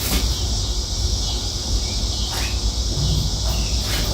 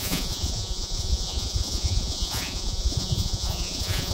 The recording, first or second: first